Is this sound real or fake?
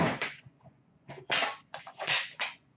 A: fake